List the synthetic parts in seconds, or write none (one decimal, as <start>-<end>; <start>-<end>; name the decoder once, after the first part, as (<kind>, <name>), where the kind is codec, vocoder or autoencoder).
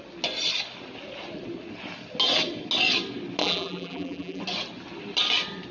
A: 3.4-4.4 (vocoder, BigVGAN v2)